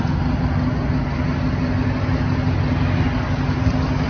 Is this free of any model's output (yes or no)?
yes